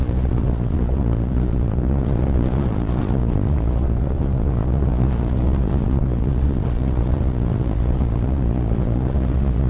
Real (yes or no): no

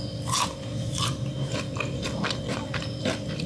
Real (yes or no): no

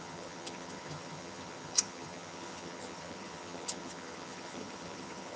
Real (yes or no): no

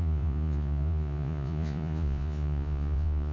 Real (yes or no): no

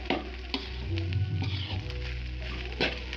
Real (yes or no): yes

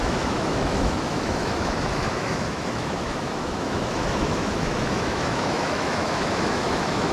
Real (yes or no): no